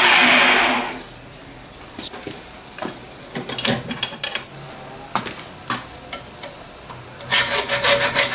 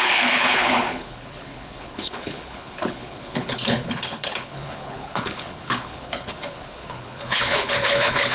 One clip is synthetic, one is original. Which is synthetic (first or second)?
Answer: second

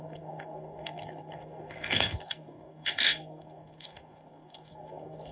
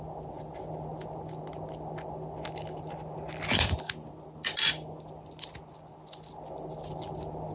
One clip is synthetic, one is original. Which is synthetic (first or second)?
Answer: first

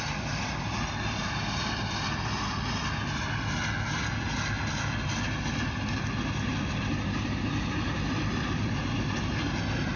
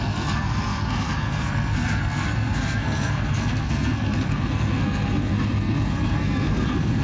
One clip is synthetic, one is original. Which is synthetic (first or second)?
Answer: second